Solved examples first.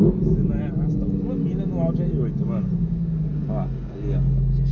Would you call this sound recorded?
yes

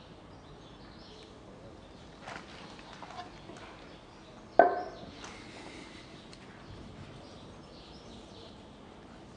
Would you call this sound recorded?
yes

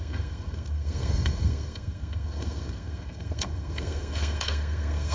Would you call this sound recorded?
no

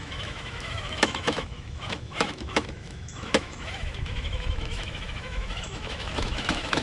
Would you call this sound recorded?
no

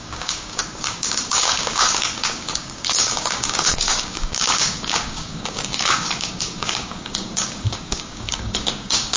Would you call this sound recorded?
no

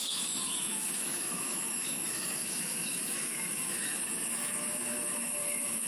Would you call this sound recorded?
no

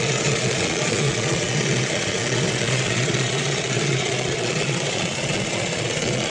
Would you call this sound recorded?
no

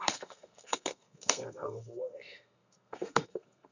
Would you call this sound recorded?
no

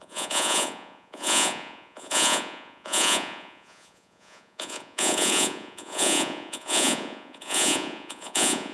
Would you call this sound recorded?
no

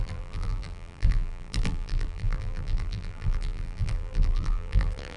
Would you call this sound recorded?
no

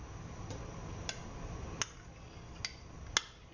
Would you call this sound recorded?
yes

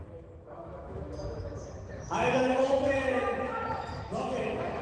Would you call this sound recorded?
no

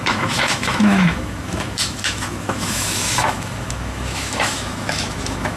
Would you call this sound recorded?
no